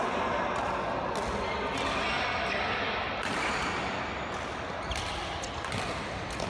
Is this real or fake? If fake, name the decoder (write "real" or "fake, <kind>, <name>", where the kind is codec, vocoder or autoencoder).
real